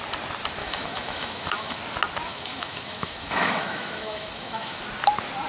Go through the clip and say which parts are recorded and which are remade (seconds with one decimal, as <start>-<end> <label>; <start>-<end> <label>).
0.0-0.6 recorded; 0.6-1.8 remade; 1.8-2.3 recorded; 2.3-4.8 remade; 4.8-5.5 recorded